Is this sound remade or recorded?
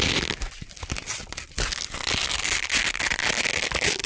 recorded